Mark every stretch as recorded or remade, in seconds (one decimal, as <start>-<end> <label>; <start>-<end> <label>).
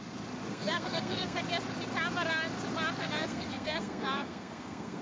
0.0-0.5 recorded; 0.5-1.4 remade; 1.4-3.0 recorded; 3.0-5.0 remade